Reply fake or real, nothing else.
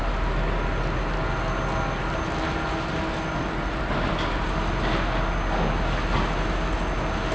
real